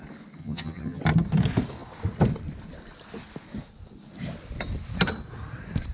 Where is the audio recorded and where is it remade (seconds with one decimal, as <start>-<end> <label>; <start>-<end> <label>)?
0.0-0.4 recorded; 0.4-1.0 remade; 1.0-5.9 recorded